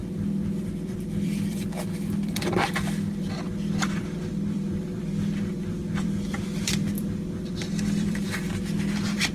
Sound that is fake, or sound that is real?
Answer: fake